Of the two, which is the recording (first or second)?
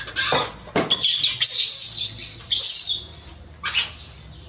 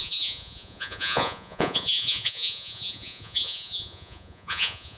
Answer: first